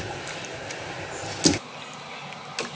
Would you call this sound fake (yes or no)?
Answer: no